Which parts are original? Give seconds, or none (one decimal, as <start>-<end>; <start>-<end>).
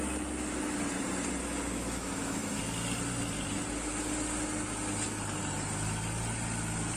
0.0-1.4; 2.6-7.0